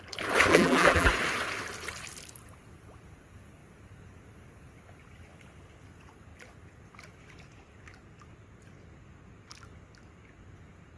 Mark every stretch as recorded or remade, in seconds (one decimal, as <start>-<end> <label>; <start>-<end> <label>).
0.0-0.5 recorded; 0.5-1.1 remade; 1.1-11.0 recorded